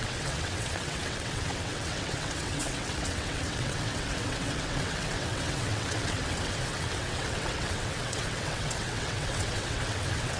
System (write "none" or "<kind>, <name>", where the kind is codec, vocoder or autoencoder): vocoder, WaveNeXt